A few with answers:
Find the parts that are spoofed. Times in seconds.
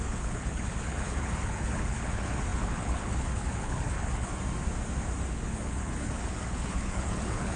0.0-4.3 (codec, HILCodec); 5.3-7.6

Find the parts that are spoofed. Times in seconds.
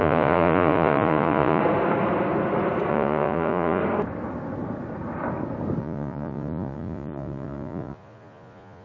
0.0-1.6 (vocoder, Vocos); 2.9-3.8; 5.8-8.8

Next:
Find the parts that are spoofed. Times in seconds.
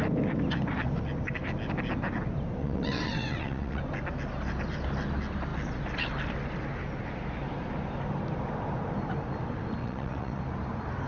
2.6-3.8 (vocoder, WaveNeXt); 9.8-10.4